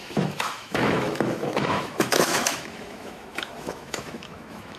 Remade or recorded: remade